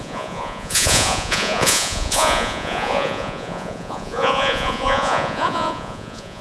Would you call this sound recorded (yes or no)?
no